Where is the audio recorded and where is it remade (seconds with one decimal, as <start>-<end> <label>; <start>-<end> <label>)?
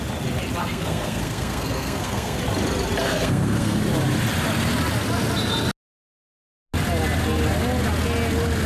0.0-0.6 recorded; 0.6-2.4 remade; 2.4-3.0 recorded; 3.0-3.8 remade; 3.8-8.7 recorded